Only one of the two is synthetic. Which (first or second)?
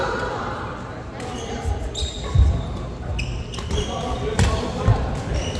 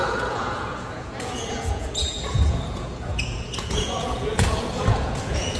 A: second